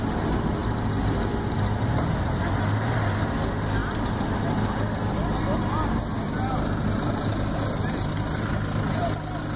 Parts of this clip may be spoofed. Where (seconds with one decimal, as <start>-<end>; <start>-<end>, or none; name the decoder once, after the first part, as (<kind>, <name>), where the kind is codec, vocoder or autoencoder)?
none